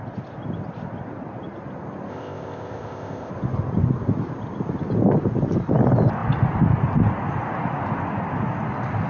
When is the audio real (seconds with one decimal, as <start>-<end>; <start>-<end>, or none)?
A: 0.0-2.1; 3.3-9.1